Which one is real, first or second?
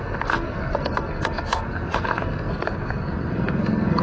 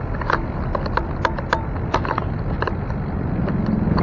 second